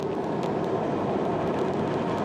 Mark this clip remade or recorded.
recorded